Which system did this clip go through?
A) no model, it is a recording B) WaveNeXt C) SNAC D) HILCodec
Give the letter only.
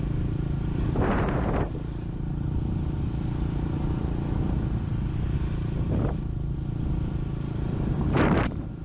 A